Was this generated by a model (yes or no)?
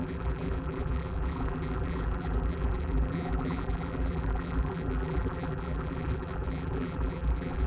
yes